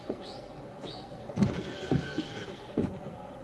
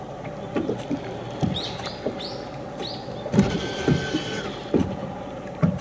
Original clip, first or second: second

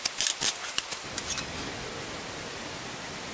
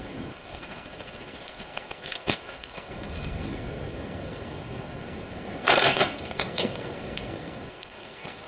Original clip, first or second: first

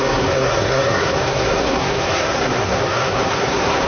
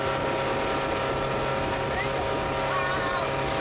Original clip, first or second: second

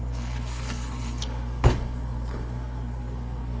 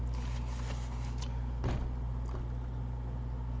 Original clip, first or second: second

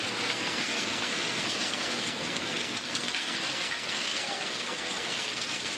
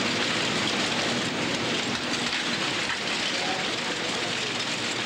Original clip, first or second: second